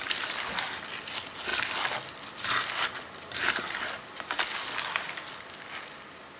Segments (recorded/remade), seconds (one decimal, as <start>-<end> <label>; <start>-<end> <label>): 0.0-6.4 recorded